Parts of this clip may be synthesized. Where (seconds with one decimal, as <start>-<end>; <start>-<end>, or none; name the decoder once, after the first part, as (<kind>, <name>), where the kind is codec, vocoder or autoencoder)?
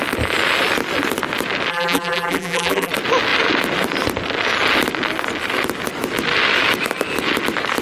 1.7-2.9 (vocoder, BigVGAN v2)